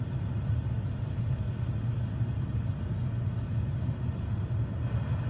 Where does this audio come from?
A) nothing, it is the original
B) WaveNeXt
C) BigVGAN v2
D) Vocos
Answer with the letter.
A